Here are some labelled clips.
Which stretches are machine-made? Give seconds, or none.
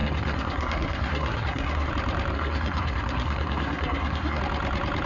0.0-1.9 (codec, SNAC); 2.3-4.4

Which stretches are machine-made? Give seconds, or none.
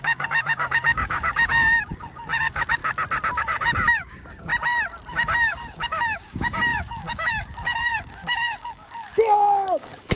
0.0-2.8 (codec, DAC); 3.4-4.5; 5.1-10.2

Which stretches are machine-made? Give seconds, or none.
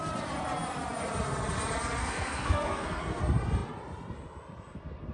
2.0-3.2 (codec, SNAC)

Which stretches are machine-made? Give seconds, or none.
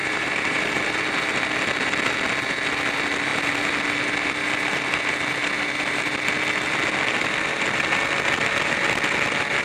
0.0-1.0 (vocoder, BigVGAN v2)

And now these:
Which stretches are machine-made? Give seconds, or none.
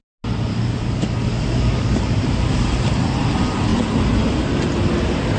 0.5-2.6 (codec, DAC)